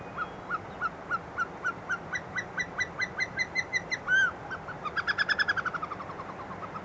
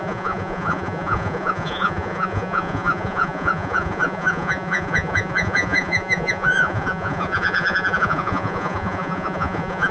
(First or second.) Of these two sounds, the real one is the first